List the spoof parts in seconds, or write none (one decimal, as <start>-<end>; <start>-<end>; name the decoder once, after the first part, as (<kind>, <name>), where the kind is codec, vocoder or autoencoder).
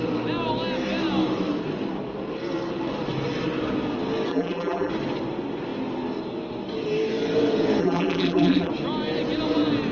4.3-4.9 (vocoder, BigVGAN v2); 7.8-8.7